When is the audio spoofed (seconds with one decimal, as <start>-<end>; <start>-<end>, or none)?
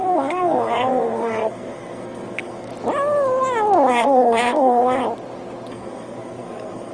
0.0-2.7; 3.9-5.0; 5.7-6.9